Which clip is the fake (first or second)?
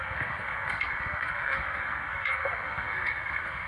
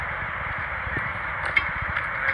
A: first